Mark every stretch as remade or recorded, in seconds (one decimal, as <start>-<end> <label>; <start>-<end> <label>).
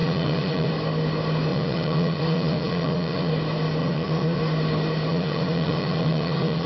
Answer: 0.0-0.7 remade; 0.7-1.5 recorded; 1.5-3.3 remade; 3.3-3.8 recorded; 3.8-4.4 remade; 4.4-5.1 recorded; 5.1-6.7 remade